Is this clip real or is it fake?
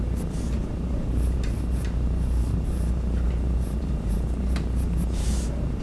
fake